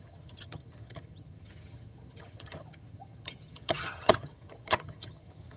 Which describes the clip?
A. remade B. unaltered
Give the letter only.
A